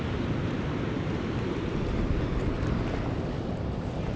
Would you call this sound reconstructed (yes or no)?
no